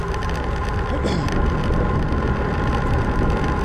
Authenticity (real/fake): real